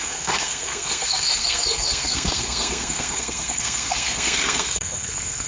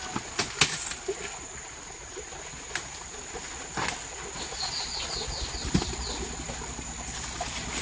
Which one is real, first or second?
second